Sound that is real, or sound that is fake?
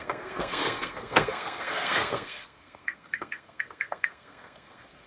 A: fake